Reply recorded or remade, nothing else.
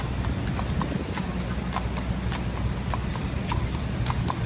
recorded